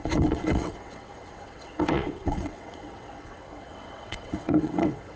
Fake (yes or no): yes